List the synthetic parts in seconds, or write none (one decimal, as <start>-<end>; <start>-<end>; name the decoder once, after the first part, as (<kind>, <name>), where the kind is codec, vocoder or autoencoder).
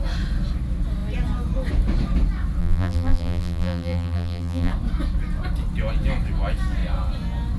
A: 2.6-4.7 (vocoder, BigVGAN v2)